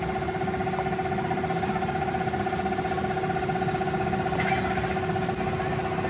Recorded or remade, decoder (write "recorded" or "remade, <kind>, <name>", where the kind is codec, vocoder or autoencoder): recorded